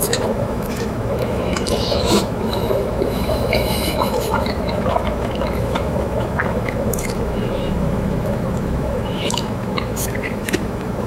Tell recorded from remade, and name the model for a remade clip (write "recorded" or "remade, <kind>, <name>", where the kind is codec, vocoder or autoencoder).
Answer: remade, autoencoder, DAC-VAE